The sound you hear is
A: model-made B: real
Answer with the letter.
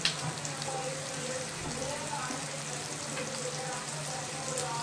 B